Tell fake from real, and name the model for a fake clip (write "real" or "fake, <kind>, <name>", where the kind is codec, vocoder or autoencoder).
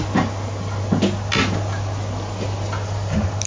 real